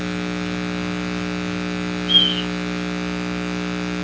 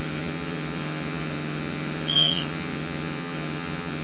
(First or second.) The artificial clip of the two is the second